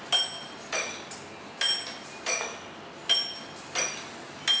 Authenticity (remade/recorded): recorded